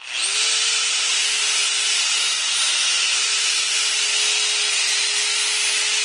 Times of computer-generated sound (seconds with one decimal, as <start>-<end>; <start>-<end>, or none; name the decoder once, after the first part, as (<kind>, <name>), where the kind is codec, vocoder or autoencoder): none